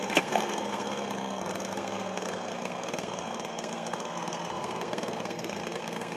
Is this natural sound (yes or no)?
no